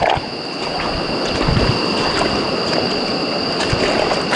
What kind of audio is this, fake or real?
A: real